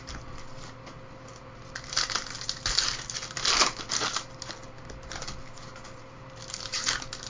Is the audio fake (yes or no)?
no